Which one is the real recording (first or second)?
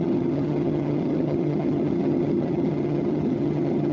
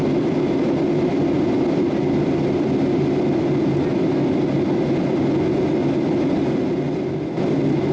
second